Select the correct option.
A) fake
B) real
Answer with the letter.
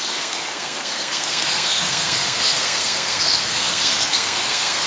A